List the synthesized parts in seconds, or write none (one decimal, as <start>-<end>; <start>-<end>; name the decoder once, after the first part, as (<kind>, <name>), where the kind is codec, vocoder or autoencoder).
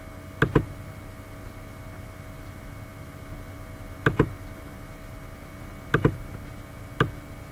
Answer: none